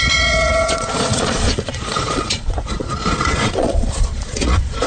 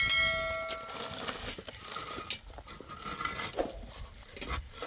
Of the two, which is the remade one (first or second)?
first